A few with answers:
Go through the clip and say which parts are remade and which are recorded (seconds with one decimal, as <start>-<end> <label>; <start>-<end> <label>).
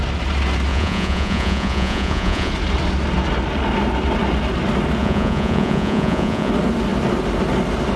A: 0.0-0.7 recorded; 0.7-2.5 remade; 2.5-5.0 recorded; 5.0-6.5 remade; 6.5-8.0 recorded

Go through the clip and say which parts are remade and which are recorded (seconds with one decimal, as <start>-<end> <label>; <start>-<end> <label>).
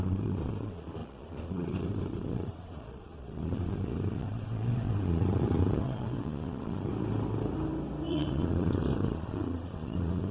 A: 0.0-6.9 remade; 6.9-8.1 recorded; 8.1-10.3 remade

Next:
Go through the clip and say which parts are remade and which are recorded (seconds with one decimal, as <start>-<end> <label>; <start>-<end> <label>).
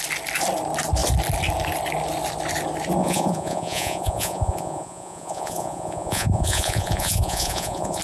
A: 0.0-3.0 recorded; 3.0-8.0 remade